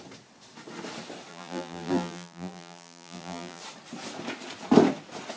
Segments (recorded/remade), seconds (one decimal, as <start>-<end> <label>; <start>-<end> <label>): 0.0-1.3 recorded; 1.3-3.6 remade; 3.6-5.4 recorded